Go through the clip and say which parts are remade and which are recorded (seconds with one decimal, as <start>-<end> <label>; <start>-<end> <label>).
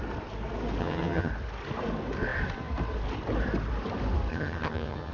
0.0-0.8 recorded; 0.8-1.3 remade; 1.3-4.3 recorded; 4.3-5.1 remade